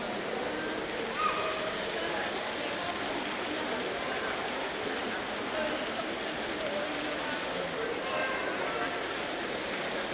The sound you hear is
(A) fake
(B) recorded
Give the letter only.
B